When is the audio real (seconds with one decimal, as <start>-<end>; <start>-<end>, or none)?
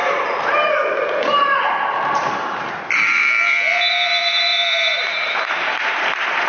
none